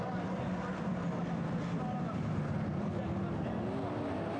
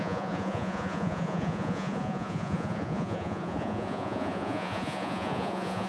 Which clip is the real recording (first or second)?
first